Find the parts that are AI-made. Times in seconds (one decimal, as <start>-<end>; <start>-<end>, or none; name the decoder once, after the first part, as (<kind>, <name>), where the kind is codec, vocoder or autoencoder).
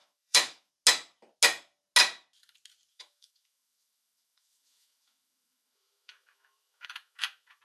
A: 0.0-0.7 (autoencoder, DAC-VAE); 2.9-7.6